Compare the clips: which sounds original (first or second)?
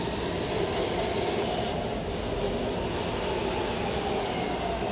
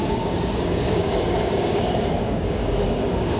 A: first